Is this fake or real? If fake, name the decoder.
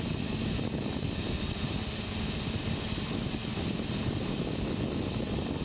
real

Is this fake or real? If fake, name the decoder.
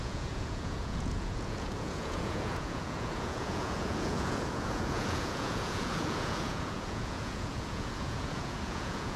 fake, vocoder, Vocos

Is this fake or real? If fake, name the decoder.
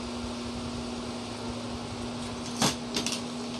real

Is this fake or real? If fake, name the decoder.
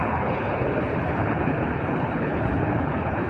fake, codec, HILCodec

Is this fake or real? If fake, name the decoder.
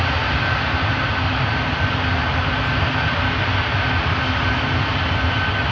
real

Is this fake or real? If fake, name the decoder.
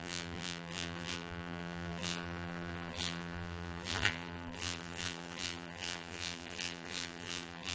fake, vocoder, BigVGAN v2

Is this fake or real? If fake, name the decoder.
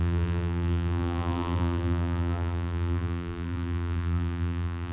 fake, vocoder, BigVGAN v2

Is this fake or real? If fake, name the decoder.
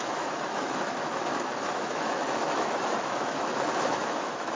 fake, autoencoder, DAC-VAE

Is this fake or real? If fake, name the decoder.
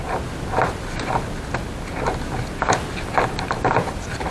real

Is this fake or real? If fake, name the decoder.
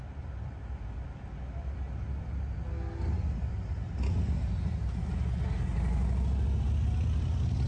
real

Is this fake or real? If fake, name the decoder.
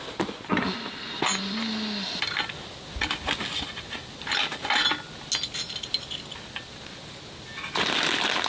real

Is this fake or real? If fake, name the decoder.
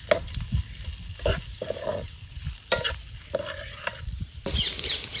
real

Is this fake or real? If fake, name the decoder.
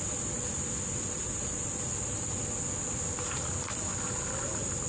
real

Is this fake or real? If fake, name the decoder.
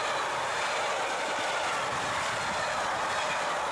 real